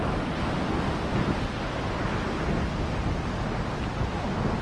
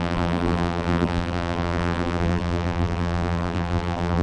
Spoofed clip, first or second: second